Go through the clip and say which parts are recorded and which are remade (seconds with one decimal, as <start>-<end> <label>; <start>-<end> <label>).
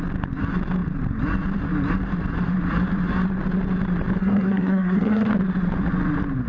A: 0.0-4.2 recorded; 4.2-5.3 remade; 5.3-6.5 recorded